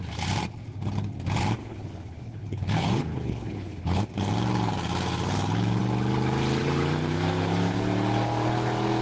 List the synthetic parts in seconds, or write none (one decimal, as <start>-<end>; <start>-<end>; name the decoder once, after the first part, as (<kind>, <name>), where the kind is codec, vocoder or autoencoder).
1.6-4.0 (codec, HILCodec)